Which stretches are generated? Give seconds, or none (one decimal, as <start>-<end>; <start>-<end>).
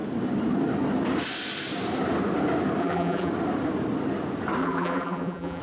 2.8-3.3; 4.6-5.6